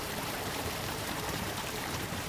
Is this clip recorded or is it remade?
remade